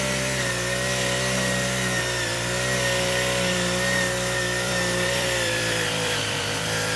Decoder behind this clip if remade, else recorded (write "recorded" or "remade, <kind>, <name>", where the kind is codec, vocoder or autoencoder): remade, vocoder, BigVGAN v2